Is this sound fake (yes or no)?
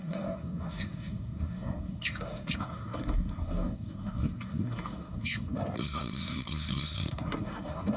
yes